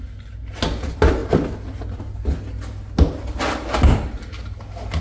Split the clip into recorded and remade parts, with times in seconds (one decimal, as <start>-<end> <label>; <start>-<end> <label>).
0.0-5.0 recorded